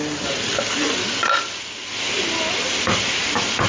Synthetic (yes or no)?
no